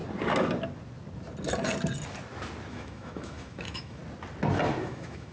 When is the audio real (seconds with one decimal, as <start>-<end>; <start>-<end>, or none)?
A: 0.0-2.7; 4.0-4.8